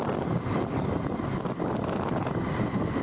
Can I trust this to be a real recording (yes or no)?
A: yes